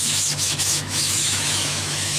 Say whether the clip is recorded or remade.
remade